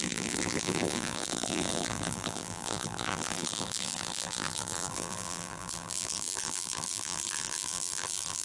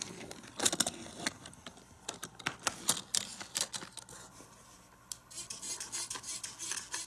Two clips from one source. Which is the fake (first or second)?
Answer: first